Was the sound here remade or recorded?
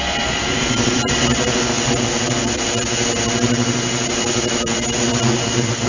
recorded